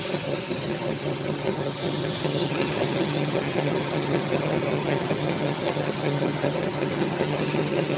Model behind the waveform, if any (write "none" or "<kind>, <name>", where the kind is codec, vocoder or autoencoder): vocoder, HiFi-GAN